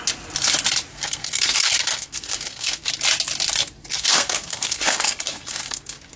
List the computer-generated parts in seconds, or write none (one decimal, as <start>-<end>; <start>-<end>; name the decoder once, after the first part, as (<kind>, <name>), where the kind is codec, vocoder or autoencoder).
0.9-2.9 (codec, SNAC); 3.9-6.2